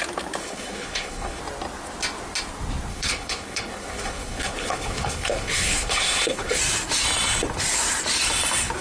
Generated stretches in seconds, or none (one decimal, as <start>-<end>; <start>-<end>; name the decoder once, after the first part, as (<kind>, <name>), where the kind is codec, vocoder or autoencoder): 0.4-1.4 (codec, HILCodec); 2.9-6.6